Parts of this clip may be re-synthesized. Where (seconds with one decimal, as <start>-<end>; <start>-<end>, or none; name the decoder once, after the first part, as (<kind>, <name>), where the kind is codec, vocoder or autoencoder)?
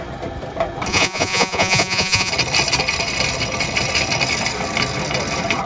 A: 0.9-2.3 (vocoder, Vocos)